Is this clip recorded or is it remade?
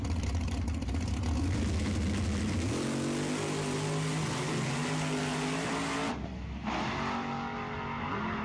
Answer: recorded